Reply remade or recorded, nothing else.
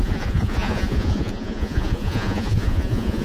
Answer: remade